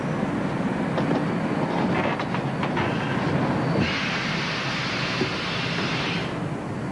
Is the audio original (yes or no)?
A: yes